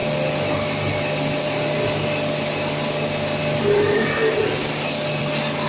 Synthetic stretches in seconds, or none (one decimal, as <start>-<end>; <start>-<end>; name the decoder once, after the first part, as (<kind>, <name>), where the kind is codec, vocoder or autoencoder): none